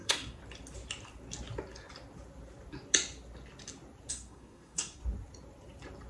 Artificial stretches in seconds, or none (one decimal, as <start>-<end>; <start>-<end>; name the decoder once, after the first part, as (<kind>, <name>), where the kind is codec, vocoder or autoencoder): 0.0-0.4 (codec, SNAC); 4.1-5.0